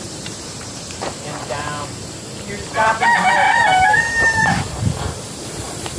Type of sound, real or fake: fake